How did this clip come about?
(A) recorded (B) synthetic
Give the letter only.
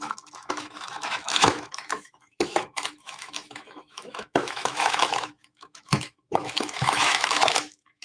B